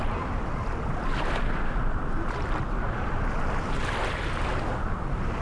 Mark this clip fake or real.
real